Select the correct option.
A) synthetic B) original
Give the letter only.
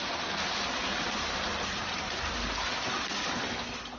B